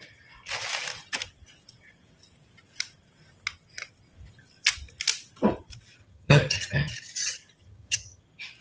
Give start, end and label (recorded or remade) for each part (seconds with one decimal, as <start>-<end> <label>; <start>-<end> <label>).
0.0-6.0 recorded; 6.0-6.9 remade; 6.9-7.6 recorded; 7.6-8.2 remade; 8.2-8.6 recorded